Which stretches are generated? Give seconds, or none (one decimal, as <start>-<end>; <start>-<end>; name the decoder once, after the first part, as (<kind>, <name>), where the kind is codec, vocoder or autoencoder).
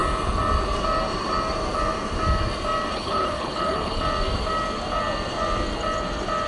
2.9-4.0 (codec, HILCodec)